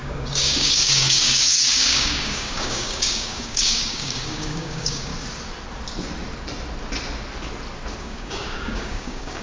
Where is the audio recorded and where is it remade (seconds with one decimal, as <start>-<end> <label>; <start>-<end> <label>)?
0.0-5.1 remade; 5.1-8.0 recorded; 8.0-9.4 remade